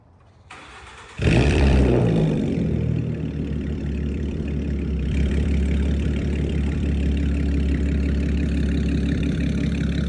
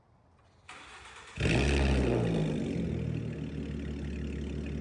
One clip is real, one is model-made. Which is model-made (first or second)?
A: first